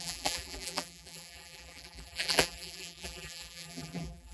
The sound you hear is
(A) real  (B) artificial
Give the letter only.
B